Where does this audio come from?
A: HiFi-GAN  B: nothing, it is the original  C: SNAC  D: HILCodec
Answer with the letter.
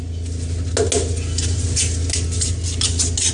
B